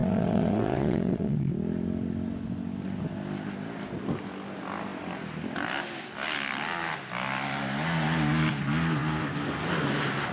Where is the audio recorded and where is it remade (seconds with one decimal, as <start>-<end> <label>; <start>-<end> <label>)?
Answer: 0.0-1.5 remade; 1.5-10.3 recorded

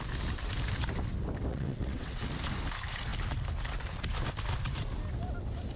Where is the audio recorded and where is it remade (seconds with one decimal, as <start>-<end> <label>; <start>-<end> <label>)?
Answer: 0.0-1.5 recorded; 1.5-2.2 remade; 2.2-5.8 recorded

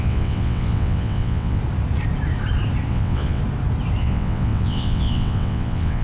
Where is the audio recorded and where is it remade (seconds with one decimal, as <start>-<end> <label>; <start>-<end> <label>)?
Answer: 0.0-1.6 remade; 1.6-2.9 recorded; 2.9-3.4 remade; 3.4-4.0 recorded; 4.0-6.0 remade

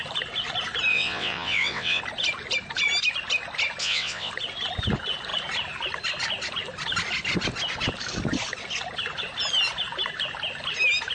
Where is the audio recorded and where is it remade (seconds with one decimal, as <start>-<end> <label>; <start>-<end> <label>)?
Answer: 0.0-0.9 recorded; 0.9-2.0 remade; 2.0-3.8 recorded; 3.8-4.3 remade; 4.3-11.1 recorded

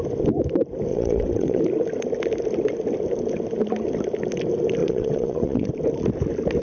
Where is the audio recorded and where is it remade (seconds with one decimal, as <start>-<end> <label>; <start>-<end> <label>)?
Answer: 0.0-0.9 recorded; 0.9-1.6 remade; 1.6-4.8 recorded; 4.8-5.7 remade; 5.7-6.6 recorded